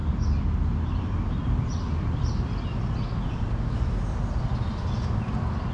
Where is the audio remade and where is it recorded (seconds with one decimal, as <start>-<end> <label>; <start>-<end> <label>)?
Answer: 0.0-5.7 recorded